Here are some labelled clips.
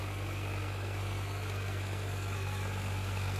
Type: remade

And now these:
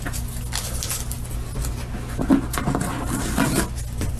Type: recorded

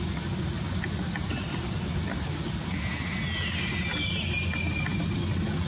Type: recorded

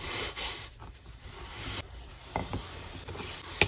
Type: recorded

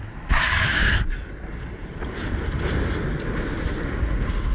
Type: recorded